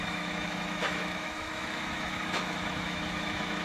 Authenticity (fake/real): fake